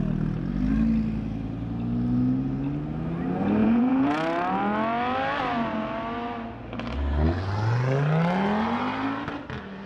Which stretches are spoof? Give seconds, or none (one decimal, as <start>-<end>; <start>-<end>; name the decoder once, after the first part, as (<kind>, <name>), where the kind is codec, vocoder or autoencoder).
3.6-4.1 (vocoder, Vocos)